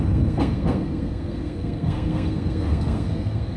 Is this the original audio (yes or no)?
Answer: no